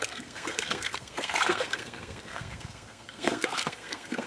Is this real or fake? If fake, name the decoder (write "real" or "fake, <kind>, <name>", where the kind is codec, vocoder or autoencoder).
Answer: fake, codec, SNAC